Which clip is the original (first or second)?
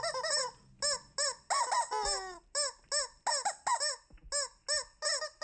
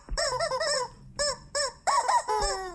first